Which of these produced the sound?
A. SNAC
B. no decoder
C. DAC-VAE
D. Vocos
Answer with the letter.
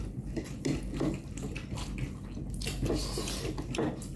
B